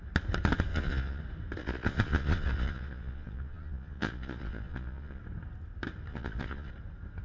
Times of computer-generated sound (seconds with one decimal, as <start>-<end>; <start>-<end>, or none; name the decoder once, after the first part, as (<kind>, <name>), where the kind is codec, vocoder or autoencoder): 0.7-1.2 (vocoder, Vocos); 1.6-5.2; 6.1-6.7